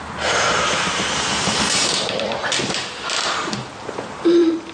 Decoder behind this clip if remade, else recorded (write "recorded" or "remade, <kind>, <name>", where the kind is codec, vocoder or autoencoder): remade, vocoder, BigVGAN v2